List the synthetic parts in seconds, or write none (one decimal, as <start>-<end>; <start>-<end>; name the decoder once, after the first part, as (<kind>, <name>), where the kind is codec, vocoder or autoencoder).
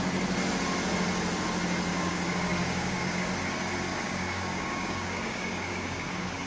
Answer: 1.9-3.3 (codec, DAC); 3.9-6.5